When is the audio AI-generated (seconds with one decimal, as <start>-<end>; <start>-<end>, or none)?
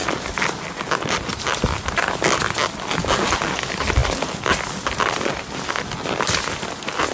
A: none